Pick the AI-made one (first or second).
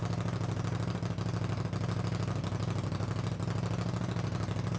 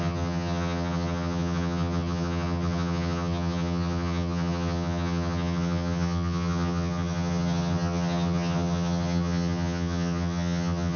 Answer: second